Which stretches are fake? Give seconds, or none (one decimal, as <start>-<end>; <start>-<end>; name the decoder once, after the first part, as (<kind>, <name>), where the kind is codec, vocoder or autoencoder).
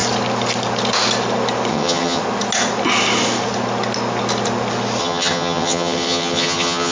1.7-2.2 (vocoder, HiFi-GAN); 5.0-6.9